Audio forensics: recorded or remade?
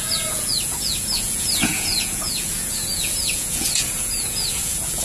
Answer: remade